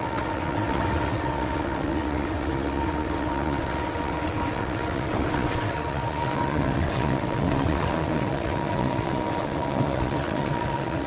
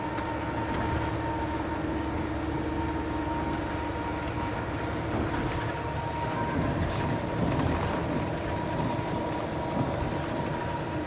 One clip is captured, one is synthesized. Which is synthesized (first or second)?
first